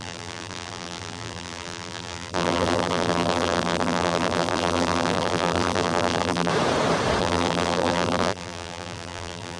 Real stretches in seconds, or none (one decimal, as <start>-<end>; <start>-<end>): 6.5-7.2